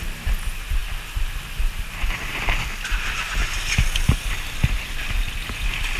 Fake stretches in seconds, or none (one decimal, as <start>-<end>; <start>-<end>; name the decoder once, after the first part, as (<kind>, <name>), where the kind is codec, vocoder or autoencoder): none